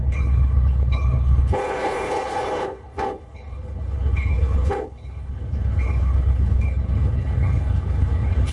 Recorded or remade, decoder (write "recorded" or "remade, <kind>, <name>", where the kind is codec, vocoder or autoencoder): remade, codec, HILCodec